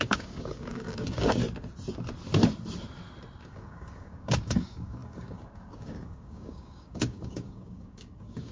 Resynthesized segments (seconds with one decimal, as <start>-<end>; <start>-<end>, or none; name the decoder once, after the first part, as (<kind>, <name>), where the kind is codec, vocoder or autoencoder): 0.0-1.4 (codec, DAC); 3.4-8.5